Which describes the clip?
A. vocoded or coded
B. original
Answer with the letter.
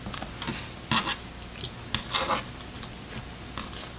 B